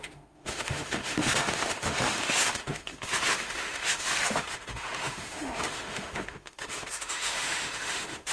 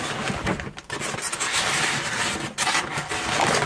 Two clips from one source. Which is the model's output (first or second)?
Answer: first